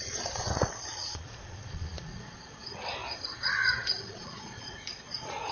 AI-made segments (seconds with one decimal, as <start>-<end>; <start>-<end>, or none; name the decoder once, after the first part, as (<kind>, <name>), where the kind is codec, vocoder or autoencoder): 0.0-5.5 (vocoder, Vocos)